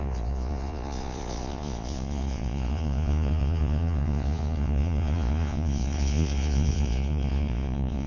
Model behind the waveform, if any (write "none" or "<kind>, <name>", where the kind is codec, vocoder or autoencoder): vocoder, Vocos